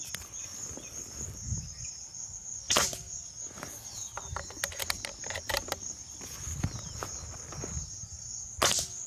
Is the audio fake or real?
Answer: real